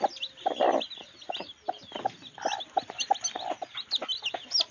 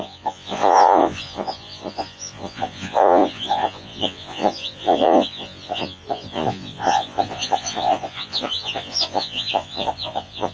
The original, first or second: first